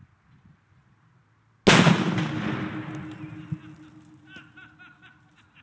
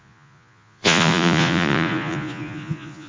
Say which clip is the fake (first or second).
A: second